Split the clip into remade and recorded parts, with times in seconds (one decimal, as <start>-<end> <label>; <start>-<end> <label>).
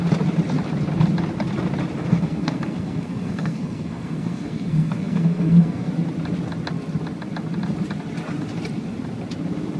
0.0-2.0 recorded; 2.0-5.9 remade; 5.9-9.8 recorded